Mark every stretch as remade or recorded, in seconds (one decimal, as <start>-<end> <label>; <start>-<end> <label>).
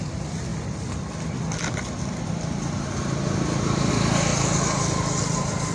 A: 0.0-5.7 recorded